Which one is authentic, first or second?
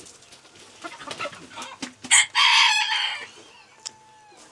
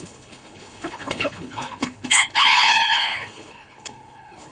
first